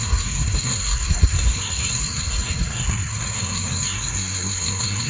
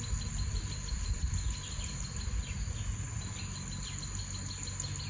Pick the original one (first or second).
second